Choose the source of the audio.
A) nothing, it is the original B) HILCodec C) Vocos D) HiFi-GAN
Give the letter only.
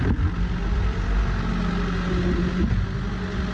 A